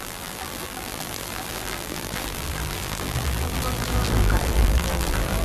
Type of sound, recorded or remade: remade